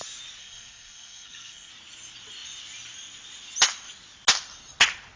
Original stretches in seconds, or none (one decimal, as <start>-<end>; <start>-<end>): 0.0-0.4; 1.7-5.2